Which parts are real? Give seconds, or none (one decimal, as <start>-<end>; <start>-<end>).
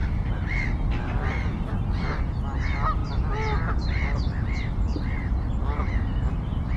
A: 0.6-6.8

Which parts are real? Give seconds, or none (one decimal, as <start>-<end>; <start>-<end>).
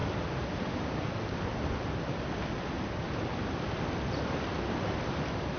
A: 1.5-5.6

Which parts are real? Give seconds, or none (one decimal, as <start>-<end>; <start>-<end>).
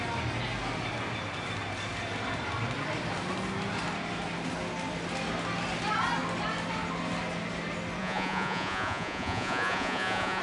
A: 0.0-8.0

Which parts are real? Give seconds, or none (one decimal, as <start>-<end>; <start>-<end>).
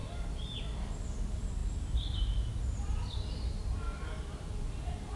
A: 0.0-0.6; 1.6-4.6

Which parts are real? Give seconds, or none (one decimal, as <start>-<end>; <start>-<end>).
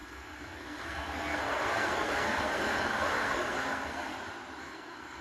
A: 4.1-4.6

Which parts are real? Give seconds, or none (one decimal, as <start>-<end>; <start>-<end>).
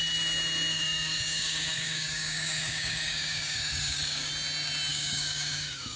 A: 0.0-0.7; 4.3-4.9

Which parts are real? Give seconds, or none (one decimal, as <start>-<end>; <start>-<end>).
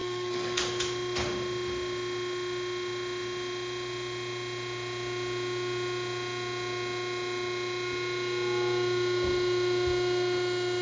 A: 0.6-10.8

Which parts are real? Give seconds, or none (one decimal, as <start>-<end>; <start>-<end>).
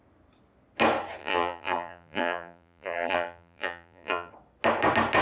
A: 0.0-1.2; 4.3-5.2